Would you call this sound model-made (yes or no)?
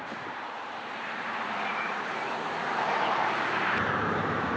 yes